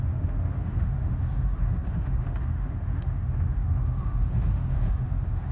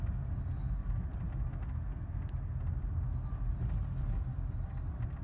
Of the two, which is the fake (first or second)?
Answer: first